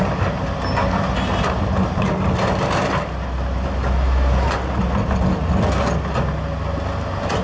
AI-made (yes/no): no